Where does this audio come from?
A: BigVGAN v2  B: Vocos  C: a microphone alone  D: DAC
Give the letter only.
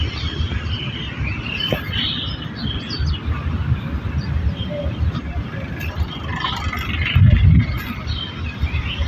C